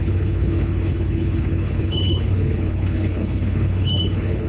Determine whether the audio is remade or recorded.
remade